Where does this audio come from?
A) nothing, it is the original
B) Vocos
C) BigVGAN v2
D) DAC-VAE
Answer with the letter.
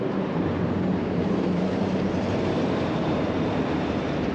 C